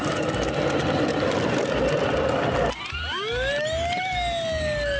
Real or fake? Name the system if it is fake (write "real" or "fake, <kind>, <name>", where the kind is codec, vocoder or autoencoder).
real